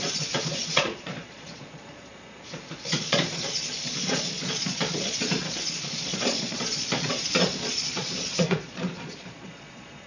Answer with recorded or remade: remade